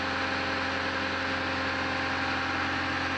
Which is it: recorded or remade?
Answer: recorded